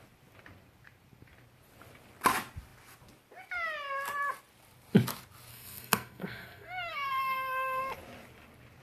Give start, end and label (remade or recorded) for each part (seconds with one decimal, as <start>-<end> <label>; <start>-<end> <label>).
0.0-5.5 recorded; 5.5-7.8 remade; 7.8-8.8 recorded